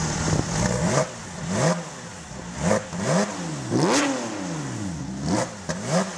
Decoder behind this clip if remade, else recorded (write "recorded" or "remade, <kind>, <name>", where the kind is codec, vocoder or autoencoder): recorded